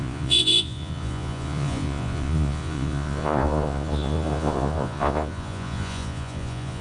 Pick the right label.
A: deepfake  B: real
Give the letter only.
A